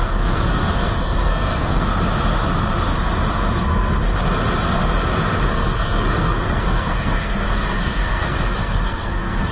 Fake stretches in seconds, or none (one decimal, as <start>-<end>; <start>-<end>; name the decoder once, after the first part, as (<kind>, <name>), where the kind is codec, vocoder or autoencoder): 0.0-1.9 (codec, SNAC); 5.5-9.5